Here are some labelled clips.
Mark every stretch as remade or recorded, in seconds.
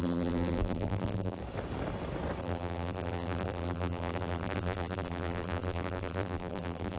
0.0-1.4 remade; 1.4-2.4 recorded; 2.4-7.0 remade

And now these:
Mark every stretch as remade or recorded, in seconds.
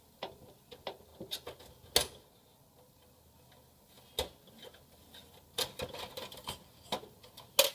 0.0-7.7 recorded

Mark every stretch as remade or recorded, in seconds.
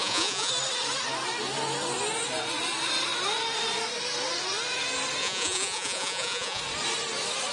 0.0-0.5 remade; 0.5-5.2 recorded; 5.2-6.6 remade; 6.6-7.5 recorded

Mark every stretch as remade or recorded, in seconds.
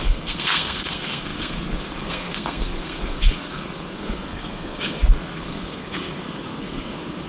0.0-7.3 remade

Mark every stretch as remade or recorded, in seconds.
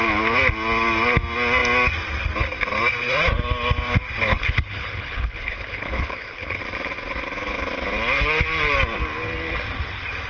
0.0-4.3 recorded; 4.3-6.6 remade; 6.6-10.3 recorded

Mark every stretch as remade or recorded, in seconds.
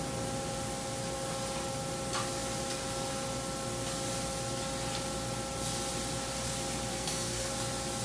0.0-6.9 recorded; 6.9-7.5 remade; 7.5-8.0 recorded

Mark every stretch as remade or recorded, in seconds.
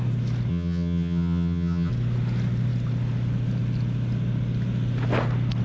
0.0-0.5 recorded; 0.5-1.9 remade; 1.9-5.6 recorded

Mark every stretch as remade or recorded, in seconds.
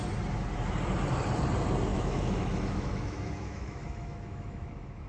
0.0-1.9 recorded; 1.9-5.1 remade